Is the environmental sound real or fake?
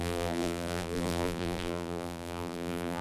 fake